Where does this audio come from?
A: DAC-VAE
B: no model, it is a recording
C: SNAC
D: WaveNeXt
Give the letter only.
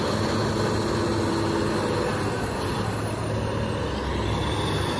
B